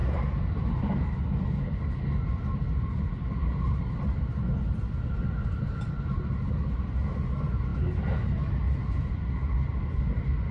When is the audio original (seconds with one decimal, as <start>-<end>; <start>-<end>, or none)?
0.0-10.5